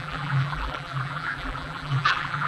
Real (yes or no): no